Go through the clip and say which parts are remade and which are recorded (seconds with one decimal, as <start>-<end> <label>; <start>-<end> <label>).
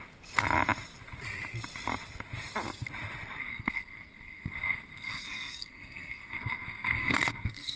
0.0-3.4 recorded; 3.4-7.8 remade